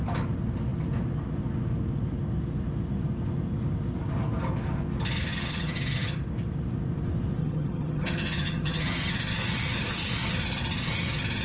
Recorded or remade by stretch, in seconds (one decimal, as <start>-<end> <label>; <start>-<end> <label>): 0.0-5.3 recorded; 5.3-6.2 remade; 6.2-7.4 recorded; 7.4-9.1 remade; 9.1-11.4 recorded